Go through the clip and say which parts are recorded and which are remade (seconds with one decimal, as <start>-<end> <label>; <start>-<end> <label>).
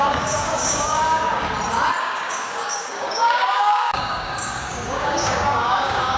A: 0.0-1.4 remade; 1.4-2.0 recorded; 2.0-6.2 remade